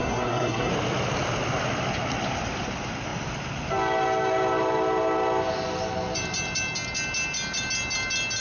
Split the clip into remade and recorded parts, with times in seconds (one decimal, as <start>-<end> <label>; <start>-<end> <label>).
0.0-0.7 remade; 0.7-8.4 recorded